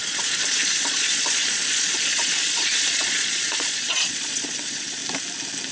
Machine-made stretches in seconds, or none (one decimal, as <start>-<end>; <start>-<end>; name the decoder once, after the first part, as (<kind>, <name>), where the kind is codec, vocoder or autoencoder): 0.0-5.0 (vocoder, Vocos)